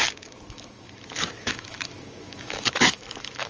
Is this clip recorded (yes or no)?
no